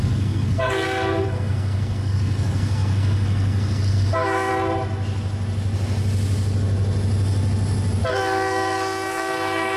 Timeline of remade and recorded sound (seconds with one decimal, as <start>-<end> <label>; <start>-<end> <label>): 0.0-4.5 remade; 4.5-8.1 recorded; 8.1-9.8 remade